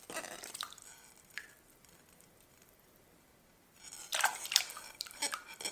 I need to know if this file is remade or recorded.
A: remade